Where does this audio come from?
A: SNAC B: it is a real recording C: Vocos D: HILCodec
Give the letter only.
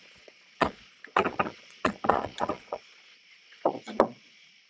C